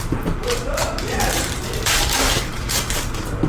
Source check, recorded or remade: remade